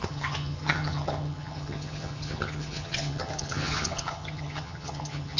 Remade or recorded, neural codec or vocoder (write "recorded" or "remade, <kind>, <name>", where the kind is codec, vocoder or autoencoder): remade, vocoder, HiFi-GAN